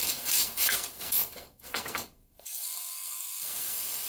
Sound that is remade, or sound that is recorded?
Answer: remade